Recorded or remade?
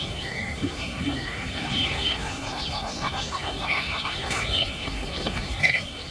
remade